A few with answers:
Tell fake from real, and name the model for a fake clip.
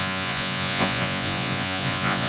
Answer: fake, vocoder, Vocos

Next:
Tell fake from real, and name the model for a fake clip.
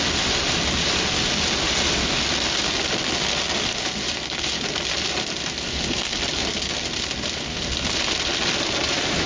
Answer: real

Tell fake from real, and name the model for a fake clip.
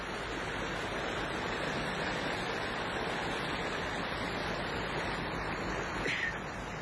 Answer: real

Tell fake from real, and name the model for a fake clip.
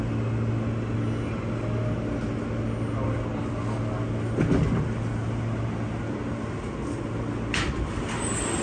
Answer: real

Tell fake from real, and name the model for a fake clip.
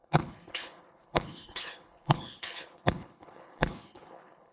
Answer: fake, codec, HILCodec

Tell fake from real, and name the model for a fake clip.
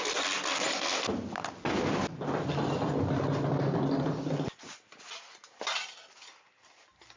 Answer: real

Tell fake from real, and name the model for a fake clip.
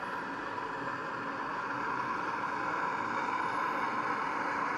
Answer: real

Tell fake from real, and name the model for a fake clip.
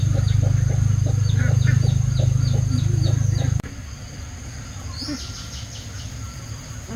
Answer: real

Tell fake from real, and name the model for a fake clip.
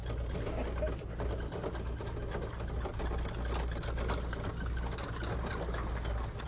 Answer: real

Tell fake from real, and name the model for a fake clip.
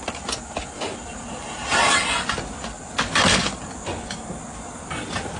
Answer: real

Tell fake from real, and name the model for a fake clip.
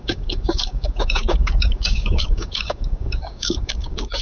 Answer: fake, codec, DAC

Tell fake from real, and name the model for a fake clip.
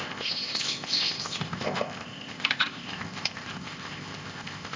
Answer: fake, codec, ZipCodec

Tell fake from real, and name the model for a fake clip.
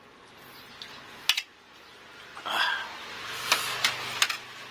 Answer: real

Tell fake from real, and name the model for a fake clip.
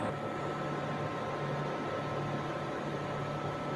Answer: real